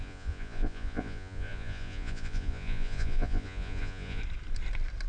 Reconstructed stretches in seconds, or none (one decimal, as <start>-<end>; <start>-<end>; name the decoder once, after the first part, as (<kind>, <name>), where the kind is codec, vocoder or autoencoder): 0.0-4.2 (vocoder, Vocos)